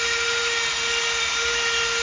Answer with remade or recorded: recorded